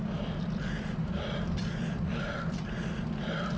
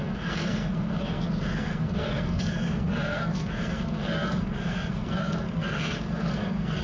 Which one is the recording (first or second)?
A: first